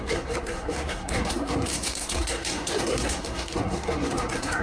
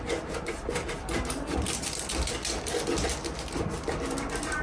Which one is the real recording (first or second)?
second